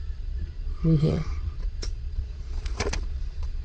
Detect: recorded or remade remade